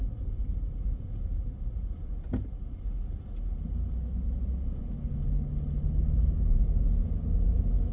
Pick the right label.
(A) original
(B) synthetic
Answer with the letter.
A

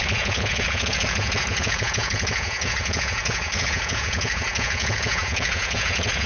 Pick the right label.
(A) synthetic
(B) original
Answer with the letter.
A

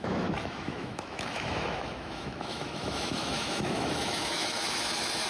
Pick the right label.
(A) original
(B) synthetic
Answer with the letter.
B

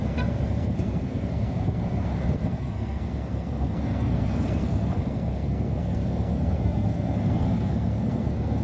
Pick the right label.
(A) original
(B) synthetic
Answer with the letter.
B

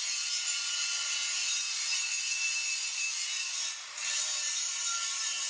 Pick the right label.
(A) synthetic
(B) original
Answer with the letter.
A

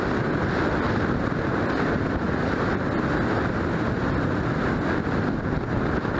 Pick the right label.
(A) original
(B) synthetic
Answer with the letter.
A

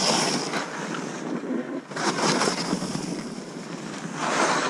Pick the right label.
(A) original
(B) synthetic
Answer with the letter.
A